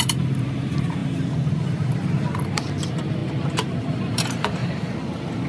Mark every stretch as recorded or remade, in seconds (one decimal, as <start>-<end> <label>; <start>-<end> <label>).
0.0-3.2 remade; 3.2-3.8 recorded; 3.8-4.6 remade; 4.6-5.5 recorded